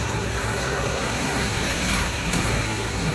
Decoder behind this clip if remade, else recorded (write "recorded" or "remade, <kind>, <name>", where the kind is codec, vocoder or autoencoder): remade, codec, SNAC